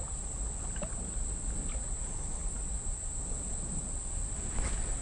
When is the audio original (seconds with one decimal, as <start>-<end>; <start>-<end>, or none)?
0.0-5.0